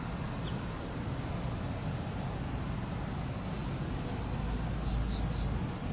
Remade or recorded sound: recorded